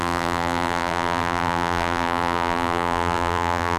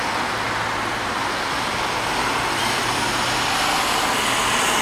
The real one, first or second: second